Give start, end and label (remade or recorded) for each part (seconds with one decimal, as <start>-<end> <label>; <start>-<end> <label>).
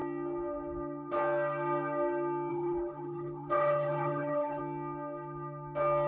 0.0-2.5 recorded; 2.5-4.6 remade; 4.6-6.1 recorded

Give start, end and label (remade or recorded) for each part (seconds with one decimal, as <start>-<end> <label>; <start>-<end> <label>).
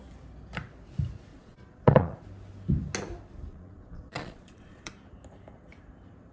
0.0-1.3 recorded; 1.3-2.2 remade; 2.2-3.5 recorded; 3.5-4.9 remade; 4.9-6.3 recorded